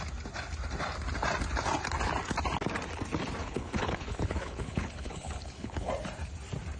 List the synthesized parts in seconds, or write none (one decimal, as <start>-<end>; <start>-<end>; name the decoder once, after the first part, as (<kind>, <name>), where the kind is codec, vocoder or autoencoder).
3.4-5.9 (codec, HILCodec)